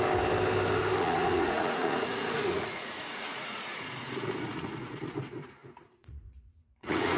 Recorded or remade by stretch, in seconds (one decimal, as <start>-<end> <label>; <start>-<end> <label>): 0.0-1.0 recorded; 1.0-5.0 remade; 5.0-5.6 recorded; 5.6-7.2 remade